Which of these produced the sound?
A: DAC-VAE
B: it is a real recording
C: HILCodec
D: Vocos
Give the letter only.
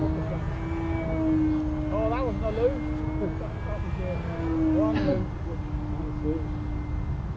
B